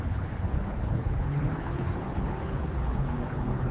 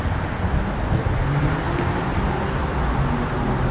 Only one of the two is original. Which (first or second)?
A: second